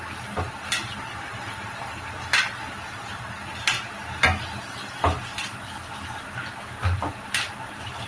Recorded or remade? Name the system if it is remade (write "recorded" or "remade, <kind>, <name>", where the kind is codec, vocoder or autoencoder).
recorded